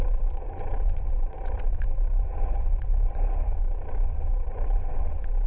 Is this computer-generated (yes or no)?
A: yes